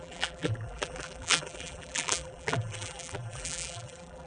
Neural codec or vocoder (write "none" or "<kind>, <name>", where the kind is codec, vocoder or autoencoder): vocoder, BigVGAN v2